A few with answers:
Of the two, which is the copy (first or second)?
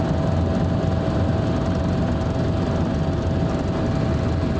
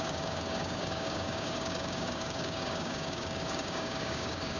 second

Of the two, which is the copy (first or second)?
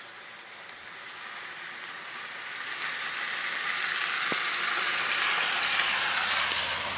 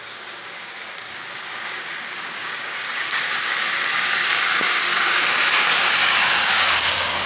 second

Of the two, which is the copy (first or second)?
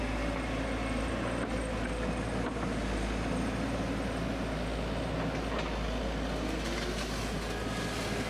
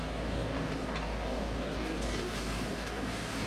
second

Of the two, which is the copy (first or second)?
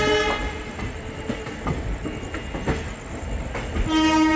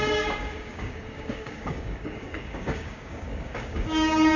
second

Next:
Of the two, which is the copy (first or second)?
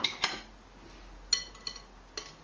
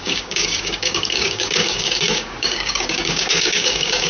second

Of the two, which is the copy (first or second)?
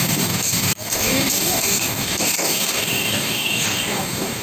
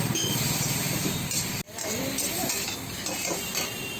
first